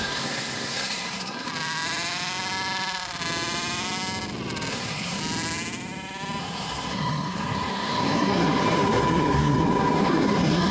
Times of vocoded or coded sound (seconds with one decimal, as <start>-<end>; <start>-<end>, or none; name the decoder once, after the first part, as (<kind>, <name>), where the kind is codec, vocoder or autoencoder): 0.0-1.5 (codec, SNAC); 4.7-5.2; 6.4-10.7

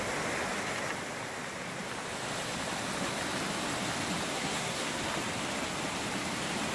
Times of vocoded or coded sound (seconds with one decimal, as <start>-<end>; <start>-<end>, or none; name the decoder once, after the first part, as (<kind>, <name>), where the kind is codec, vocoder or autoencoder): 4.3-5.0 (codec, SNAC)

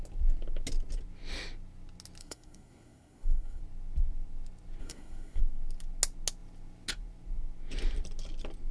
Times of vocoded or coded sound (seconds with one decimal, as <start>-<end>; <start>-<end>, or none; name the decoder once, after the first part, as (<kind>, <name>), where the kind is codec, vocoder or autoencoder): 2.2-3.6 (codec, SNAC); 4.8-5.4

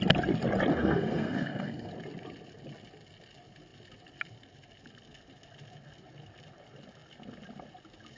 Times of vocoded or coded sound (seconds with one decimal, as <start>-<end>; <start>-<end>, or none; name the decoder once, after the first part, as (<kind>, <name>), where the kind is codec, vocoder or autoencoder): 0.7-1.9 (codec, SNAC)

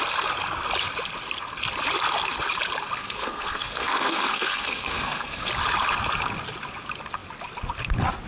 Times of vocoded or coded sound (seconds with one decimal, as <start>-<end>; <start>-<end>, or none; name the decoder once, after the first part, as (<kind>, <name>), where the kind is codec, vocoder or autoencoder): 3.0-5.5 (codec, SNAC)

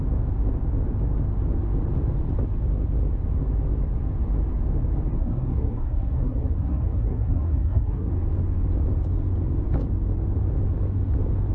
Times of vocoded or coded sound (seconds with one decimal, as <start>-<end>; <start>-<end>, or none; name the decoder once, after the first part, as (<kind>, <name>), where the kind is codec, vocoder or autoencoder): 5.2-8.1 (codec, SNAC)

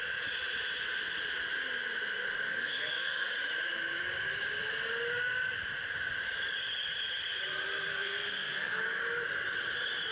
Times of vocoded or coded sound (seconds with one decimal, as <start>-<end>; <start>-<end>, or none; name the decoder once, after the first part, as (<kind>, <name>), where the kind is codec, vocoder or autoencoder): 2.5-3.3 (codec, SNAC); 7.9-8.8

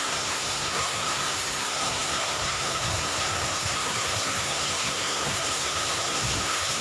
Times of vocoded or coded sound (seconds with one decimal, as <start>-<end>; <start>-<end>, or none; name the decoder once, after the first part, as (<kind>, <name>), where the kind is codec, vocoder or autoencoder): 0.0-6.8 (codec, SNAC)